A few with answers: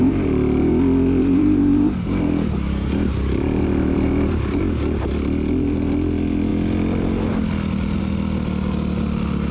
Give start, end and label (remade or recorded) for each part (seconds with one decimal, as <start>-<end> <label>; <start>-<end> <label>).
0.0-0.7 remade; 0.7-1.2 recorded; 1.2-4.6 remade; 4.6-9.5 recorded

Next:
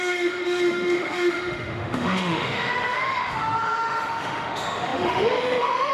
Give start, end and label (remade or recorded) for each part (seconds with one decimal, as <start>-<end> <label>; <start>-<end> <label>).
0.0-5.9 remade

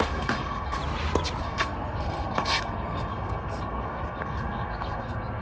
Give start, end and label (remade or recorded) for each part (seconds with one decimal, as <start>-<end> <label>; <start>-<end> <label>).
0.0-0.8 remade; 0.8-1.4 recorded; 1.4-5.4 remade

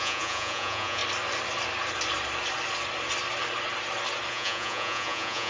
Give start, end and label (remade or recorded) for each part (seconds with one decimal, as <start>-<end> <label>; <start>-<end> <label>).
0.0-1.0 remade; 1.0-4.3 recorded; 4.3-5.5 remade

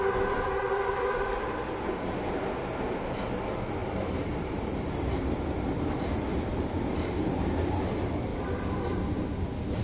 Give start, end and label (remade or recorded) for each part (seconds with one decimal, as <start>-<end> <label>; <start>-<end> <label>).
0.0-3.8 recorded; 3.8-5.3 remade; 5.3-6.5 recorded; 6.5-7.5 remade; 7.5-8.3 recorded; 8.3-9.0 remade; 9.0-9.8 recorded

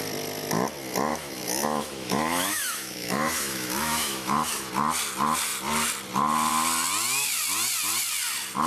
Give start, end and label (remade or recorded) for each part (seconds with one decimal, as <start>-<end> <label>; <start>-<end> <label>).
0.0-1.1 recorded; 1.1-4.7 remade; 4.7-8.7 recorded